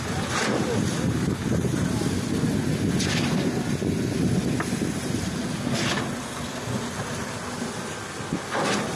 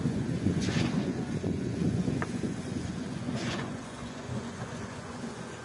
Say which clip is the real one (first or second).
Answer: first